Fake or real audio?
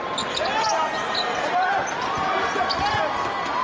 real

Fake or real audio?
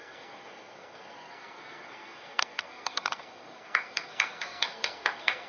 fake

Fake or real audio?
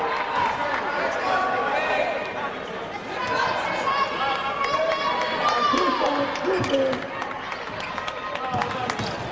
real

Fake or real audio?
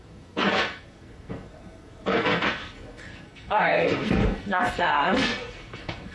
fake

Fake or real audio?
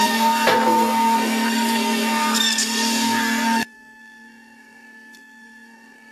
fake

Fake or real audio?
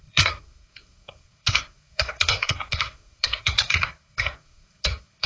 fake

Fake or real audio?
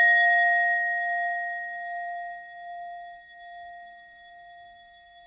fake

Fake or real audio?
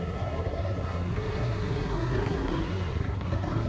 fake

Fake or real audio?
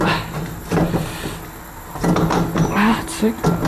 real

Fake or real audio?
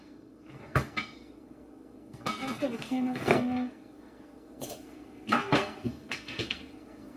fake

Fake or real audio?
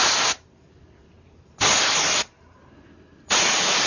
real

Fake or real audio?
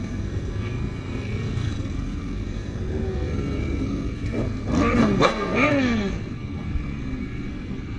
fake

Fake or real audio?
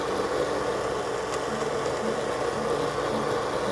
real